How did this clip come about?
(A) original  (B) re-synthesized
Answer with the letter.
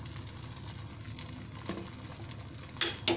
A